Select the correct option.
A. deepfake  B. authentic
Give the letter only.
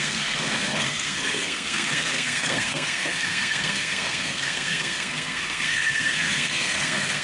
A